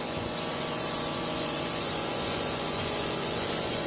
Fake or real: fake